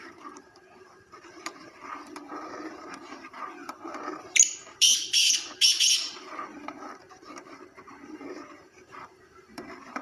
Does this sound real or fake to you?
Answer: fake